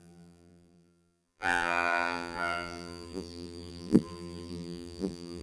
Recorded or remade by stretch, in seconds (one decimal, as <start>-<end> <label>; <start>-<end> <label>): 0.0-5.4 remade